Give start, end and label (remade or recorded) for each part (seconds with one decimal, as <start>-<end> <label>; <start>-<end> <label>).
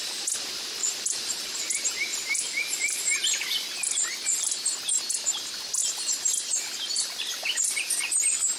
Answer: 0.0-0.8 recorded; 0.8-1.6 remade; 1.6-2.1 recorded; 2.1-4.8 remade; 4.8-5.8 recorded; 5.8-8.2 remade; 8.2-8.6 recorded